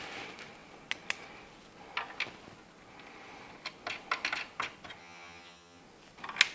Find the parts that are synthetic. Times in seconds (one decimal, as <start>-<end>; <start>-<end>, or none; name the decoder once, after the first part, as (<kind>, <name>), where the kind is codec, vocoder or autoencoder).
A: 5.0-5.8 (vocoder, HiFi-GAN)